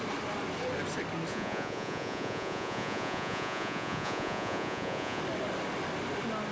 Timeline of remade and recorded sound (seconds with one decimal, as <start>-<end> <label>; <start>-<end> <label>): 0.0-1.3 recorded; 1.3-5.2 remade; 5.2-6.5 recorded